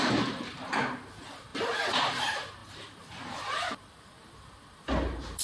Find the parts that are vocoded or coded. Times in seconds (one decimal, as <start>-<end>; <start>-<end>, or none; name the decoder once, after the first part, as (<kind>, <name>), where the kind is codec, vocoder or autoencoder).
2.6-4.1 (vocoder, BigVGAN v2)